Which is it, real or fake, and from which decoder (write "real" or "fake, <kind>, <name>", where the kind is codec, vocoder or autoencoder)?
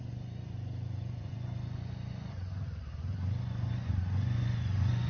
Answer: fake, vocoder, Vocos